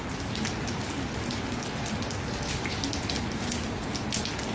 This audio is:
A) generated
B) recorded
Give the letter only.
B